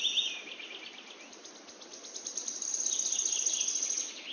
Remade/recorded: recorded